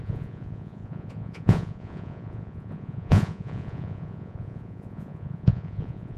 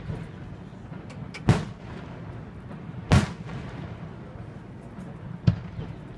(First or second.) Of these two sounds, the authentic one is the second